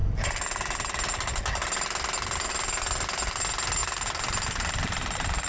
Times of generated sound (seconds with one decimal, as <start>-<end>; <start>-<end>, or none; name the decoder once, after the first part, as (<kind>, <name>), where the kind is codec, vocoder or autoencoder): 3.8-5.5 (vocoder, BigVGAN v2)